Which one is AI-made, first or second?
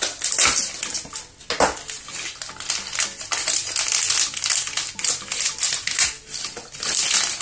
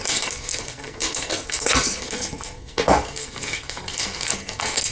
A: second